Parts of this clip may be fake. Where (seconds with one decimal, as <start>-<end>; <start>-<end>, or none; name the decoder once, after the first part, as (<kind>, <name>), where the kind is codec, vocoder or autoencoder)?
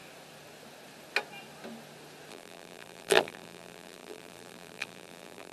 2.3-5.5 (vocoder, BigVGAN v2)